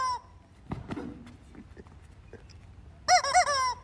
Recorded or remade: recorded